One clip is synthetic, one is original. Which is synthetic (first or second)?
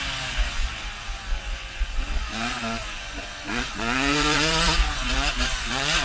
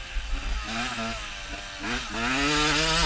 first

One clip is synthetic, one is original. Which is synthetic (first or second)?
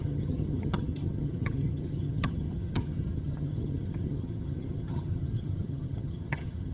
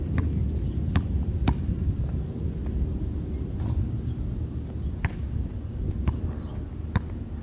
first